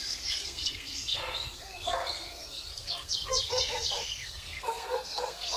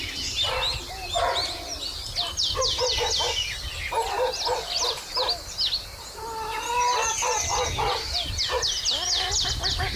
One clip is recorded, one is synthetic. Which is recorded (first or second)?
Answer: second